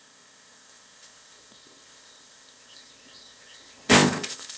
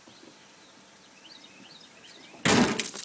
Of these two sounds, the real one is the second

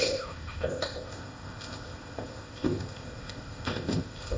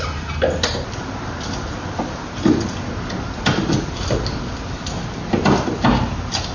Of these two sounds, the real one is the second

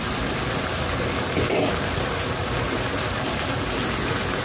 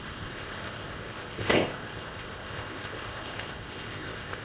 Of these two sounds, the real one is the first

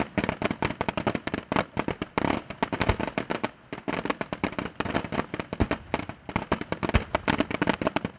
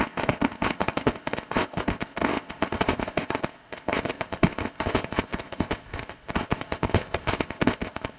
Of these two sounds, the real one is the first